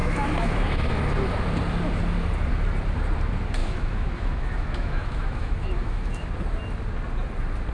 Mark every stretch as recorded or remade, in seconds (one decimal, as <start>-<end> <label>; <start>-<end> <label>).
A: 0.0-0.9 remade; 0.9-3.6 recorded; 3.6-6.3 remade; 6.3-7.7 recorded